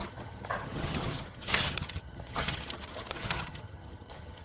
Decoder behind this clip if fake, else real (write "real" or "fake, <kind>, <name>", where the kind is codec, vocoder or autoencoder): fake, vocoder, HiFi-GAN